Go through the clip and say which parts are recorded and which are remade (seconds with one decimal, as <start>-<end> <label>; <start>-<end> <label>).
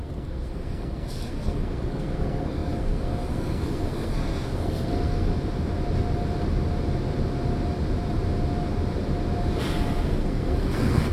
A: 0.0-5.3 remade; 5.3-10.0 recorded; 10.0-11.1 remade